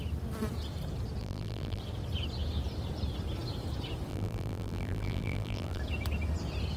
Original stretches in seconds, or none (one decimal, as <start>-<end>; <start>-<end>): 0.0-1.2; 1.8-4.1; 5.8-6.8